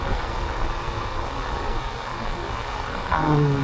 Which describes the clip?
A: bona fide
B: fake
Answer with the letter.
B